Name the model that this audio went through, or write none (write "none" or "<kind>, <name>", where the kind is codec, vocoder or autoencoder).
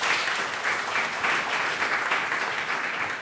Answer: none